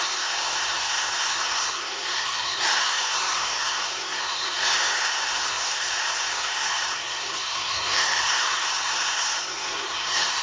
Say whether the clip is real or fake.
fake